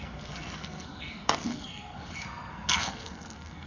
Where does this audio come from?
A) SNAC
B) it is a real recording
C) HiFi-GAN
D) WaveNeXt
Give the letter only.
A